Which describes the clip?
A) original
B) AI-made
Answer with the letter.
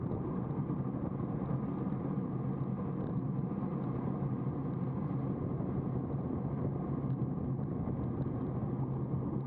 A